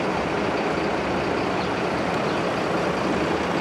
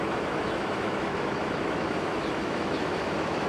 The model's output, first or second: second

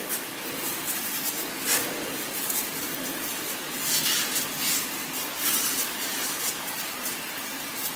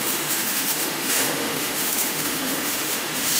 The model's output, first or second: second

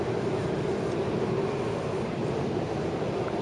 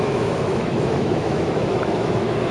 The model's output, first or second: second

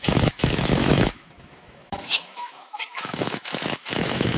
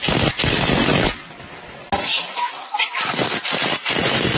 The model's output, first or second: first